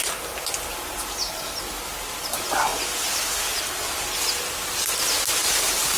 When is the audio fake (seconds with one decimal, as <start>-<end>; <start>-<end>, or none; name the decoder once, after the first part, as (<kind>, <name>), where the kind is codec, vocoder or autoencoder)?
none